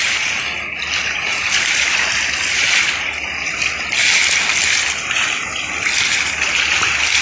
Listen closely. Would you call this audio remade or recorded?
recorded